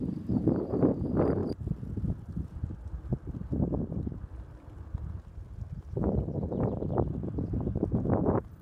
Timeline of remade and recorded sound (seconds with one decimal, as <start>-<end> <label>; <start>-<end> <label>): 0.0-1.4 remade; 1.4-2.5 recorded; 2.5-3.1 remade; 3.1-6.7 recorded; 6.7-8.6 remade

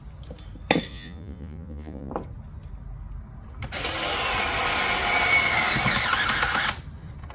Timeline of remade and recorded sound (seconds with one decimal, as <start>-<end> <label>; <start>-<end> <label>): 0.0-0.9 recorded; 0.9-2.1 remade; 2.1-7.3 recorded

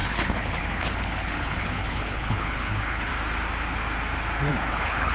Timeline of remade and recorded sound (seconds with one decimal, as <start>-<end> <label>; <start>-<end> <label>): 0.0-3.1 remade; 3.1-4.5 recorded; 4.5-5.1 remade

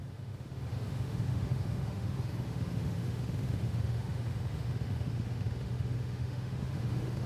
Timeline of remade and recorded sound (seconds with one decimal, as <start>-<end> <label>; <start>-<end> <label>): 0.0-7.3 remade

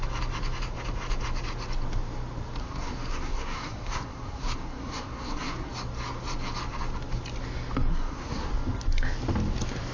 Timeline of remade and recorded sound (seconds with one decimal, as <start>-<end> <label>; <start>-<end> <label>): 0.0-2.6 recorded; 2.6-5.7 remade; 5.7-7.9 recorded; 7.9-8.5 remade; 8.5-9.9 recorded